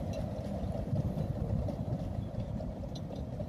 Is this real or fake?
real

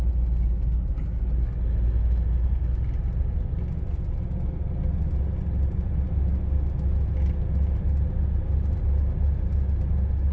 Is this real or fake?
real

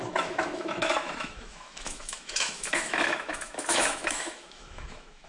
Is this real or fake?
fake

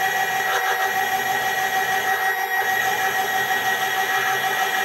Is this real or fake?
real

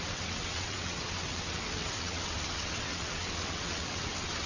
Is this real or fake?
fake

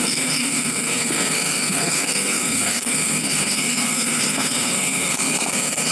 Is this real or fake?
fake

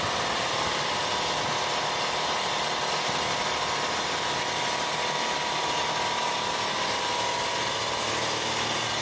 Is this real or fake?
real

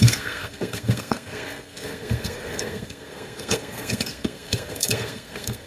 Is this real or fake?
fake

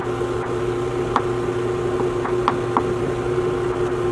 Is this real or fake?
real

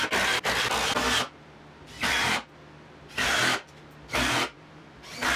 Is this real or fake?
fake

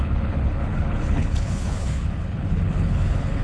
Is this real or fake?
fake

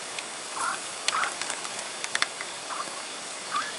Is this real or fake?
fake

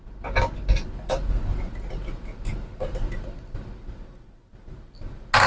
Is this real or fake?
real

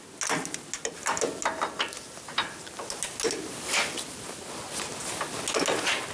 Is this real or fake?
real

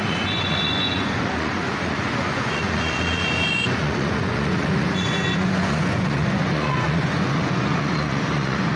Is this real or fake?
fake